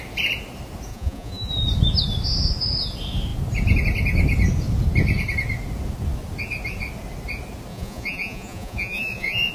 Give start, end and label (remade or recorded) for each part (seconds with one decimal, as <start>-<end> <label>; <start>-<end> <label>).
0.0-0.9 recorded; 0.9-1.5 remade; 1.5-7.7 recorded; 7.7-9.5 remade